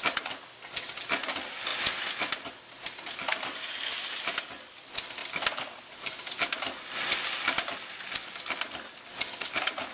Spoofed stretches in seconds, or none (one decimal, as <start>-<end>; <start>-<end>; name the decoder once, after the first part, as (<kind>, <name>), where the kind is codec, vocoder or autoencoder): none